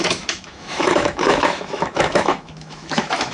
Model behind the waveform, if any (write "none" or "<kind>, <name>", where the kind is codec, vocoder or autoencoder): autoencoder, DAC-VAE